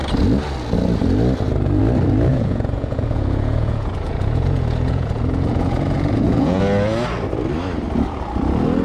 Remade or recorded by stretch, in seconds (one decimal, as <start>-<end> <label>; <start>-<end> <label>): 0.0-2.3 recorded; 2.3-6.6 remade; 6.6-8.8 recorded